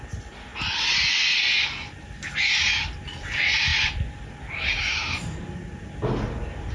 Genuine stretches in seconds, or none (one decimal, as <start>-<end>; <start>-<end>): 0.0-6.7